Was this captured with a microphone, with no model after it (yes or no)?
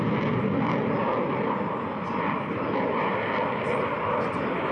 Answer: yes